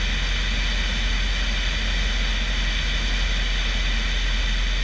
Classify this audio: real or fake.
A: real